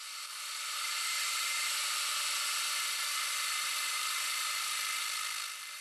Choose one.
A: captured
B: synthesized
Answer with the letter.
B